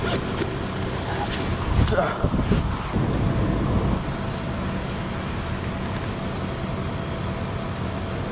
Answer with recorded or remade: recorded